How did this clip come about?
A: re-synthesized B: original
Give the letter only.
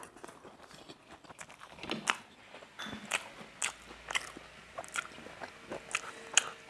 B